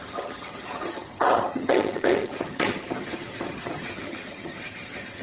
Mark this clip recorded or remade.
remade